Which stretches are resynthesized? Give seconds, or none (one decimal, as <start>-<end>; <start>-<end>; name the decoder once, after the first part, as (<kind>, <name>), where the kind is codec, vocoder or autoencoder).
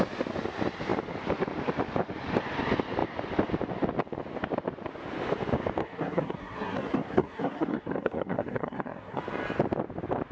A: 5.8-9.2 (codec, SNAC)